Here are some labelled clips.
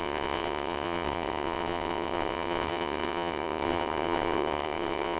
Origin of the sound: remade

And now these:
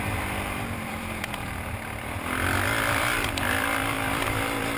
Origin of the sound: remade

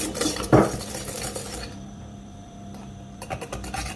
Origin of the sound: remade